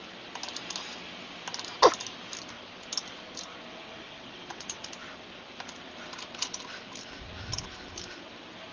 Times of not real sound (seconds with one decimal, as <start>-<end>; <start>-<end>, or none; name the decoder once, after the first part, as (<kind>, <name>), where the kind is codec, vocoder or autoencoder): 3.7-4.8 (vocoder, WaveNeXt)